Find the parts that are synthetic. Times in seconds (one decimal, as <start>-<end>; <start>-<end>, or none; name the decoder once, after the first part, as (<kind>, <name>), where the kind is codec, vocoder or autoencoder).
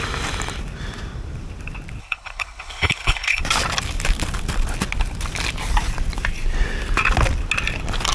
2.0-3.4 (codec, HILCodec)